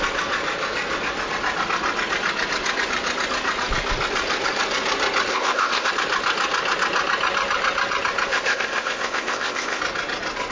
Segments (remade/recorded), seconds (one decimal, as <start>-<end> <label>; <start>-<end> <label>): 0.0-5.3 recorded; 5.3-5.9 remade; 5.9-8.3 recorded; 8.3-9.8 remade; 9.8-10.5 recorded

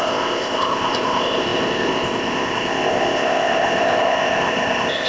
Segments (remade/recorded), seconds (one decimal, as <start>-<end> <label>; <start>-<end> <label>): 0.0-5.1 remade

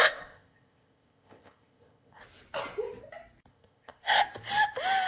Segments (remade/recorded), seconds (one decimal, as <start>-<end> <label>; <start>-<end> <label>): 0.0-2.2 remade; 2.2-3.5 recorded; 3.5-4.2 remade; 4.2-5.1 recorded

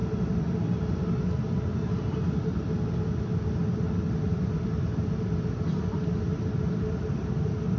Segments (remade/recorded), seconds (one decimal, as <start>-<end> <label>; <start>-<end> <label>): 0.0-7.8 recorded